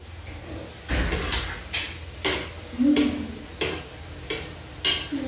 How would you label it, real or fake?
real